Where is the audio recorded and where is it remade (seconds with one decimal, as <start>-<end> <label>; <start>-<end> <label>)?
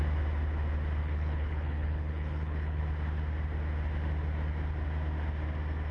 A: 0.0-1.0 recorded; 1.0-2.8 remade; 2.8-5.9 recorded